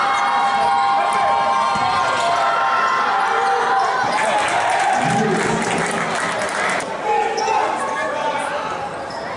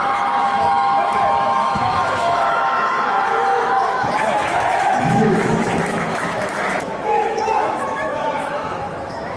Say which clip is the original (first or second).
first